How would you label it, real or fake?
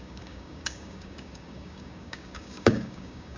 fake